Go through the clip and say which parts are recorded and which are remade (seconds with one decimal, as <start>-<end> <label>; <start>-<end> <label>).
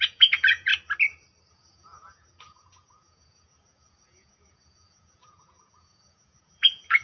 0.0-0.7 remade; 0.7-1.5 recorded; 1.5-7.0 remade